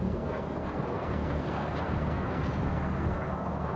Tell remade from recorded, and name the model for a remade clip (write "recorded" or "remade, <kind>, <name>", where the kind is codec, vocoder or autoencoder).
remade, codec, SNAC